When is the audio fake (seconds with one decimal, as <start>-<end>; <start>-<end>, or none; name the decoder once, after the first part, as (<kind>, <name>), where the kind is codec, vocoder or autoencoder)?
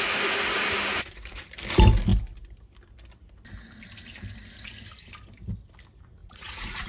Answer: 0.9-1.4 (vocoder, Vocos); 6.2-6.9